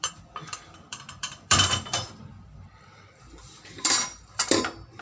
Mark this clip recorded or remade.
remade